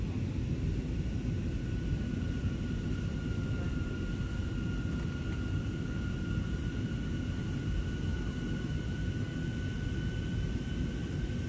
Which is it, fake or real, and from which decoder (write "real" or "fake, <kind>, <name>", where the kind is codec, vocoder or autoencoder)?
real